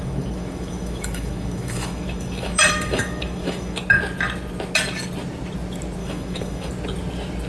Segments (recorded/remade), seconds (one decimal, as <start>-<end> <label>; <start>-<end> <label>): 0.0-3.8 remade; 3.8-6.0 recorded; 6.0-6.7 remade; 6.7-7.5 recorded

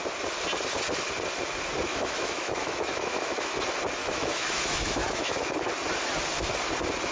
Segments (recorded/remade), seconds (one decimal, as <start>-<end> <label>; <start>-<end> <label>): 0.0-1.9 recorded; 1.9-3.5 remade; 3.5-4.0 recorded; 4.0-5.7 remade; 5.7-7.1 recorded

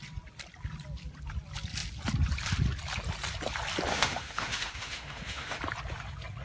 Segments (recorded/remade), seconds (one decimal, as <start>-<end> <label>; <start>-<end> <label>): 0.0-3.9 recorded; 3.9-5.6 remade; 5.6-6.4 recorded